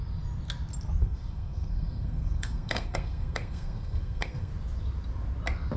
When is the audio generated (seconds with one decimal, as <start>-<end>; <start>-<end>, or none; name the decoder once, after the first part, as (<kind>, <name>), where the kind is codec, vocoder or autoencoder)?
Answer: 1.0-4.5 (codec, SNAC)